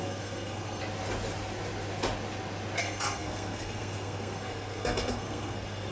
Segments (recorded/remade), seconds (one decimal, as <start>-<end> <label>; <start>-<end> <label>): 0.0-0.8 remade; 0.8-2.8 recorded; 2.8-5.9 remade